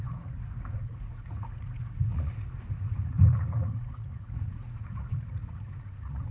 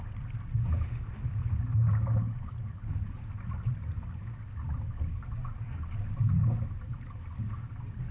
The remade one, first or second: first